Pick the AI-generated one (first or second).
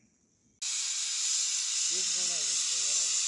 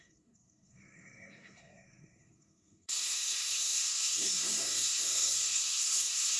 second